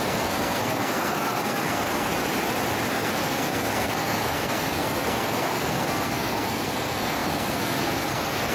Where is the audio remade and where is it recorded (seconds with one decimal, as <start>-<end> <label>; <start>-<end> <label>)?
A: 0.0-2.1 remade; 2.1-2.9 recorded; 2.9-8.5 remade